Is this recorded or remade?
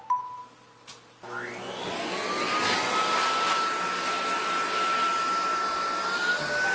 recorded